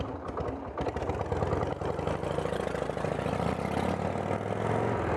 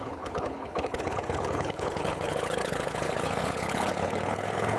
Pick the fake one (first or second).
second